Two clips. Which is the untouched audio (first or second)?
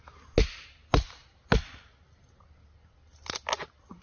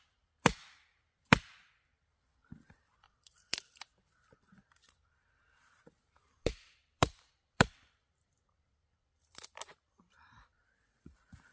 first